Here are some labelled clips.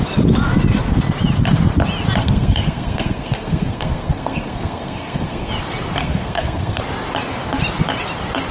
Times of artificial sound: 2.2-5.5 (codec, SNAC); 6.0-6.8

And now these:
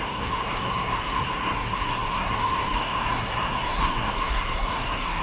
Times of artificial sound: 0.0-5.2 (codec, SNAC)

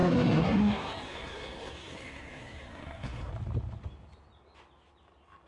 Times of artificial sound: 0.0-3.3 (codec, SNAC)

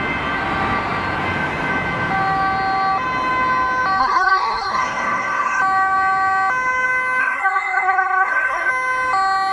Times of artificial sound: 4.0-5.6 (codec, SNAC); 7.2-8.7